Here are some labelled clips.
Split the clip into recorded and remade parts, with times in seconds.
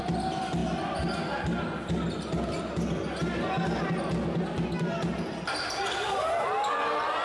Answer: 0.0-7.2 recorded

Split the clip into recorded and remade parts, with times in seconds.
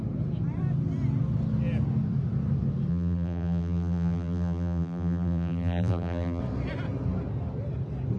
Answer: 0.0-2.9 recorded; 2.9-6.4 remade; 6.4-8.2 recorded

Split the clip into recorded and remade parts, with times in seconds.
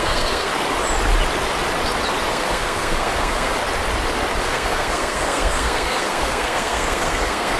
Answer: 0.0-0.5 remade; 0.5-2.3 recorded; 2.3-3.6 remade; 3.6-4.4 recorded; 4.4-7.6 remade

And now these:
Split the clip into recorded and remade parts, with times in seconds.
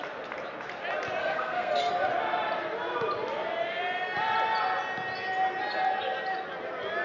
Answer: 0.0-1.2 recorded; 1.2-1.9 remade; 1.9-7.0 recorded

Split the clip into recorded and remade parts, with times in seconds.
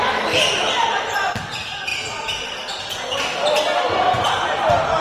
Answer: 0.0-5.0 recorded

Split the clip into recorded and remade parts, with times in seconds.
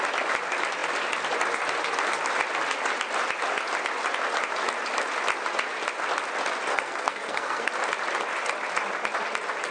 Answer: 0.0-6.7 recorded; 6.7-7.7 remade; 7.7-9.7 recorded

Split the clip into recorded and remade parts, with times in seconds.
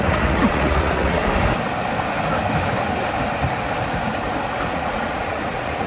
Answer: 0.0-1.2 remade; 1.2-4.7 recorded; 4.7-5.9 remade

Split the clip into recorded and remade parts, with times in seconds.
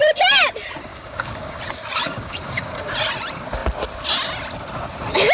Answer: 0.0-0.9 recorded; 0.9-1.6 remade; 1.6-2.0 recorded; 2.0-2.7 remade; 2.7-5.3 recorded